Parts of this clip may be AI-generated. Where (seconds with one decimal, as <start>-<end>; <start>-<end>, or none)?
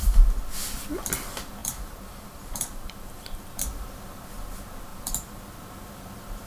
1.6-3.6; 4.9-5.4